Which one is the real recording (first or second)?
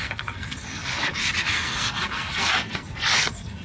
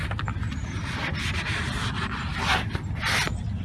second